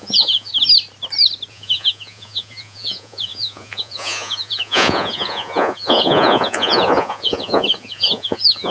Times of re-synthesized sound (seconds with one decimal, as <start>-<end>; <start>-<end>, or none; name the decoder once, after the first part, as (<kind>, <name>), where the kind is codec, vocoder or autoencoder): 0.0-0.5 (vocoder, Vocos); 1.5-8.7

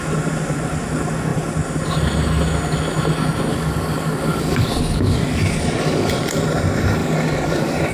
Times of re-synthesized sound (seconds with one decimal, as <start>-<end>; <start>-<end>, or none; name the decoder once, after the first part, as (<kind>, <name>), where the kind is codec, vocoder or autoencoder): 3.5-6.1 (codec, DAC); 7.0-7.9

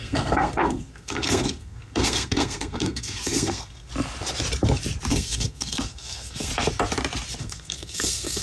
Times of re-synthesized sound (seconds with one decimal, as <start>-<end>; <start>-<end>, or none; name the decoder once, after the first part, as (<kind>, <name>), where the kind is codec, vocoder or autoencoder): 0.0-3.9 (codec, SNAC); 5.1-6.5; 7.4-8.4

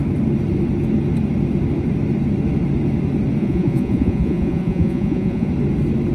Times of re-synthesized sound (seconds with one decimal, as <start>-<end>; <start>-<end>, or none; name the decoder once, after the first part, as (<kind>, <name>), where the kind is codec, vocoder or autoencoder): 3.4-5.5 (vocoder, Vocos)

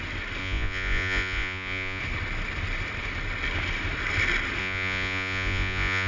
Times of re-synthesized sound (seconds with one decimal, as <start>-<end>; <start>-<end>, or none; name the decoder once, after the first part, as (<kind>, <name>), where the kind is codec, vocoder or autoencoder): 0.4-2.0 (vocoder, Vocos); 4.6-6.1

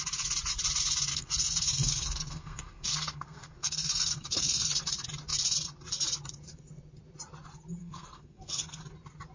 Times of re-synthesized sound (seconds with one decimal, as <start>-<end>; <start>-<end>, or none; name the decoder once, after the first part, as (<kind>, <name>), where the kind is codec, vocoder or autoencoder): 1.1-4.8 (codec, SNAC); 7.8-8.8